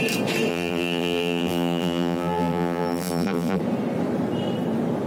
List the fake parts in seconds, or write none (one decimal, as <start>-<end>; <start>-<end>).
0.5-3.6